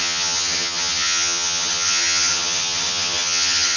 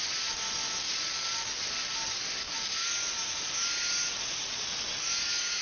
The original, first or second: second